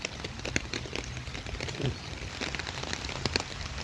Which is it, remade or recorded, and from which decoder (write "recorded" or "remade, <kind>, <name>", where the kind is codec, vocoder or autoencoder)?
remade, vocoder, BigVGAN v2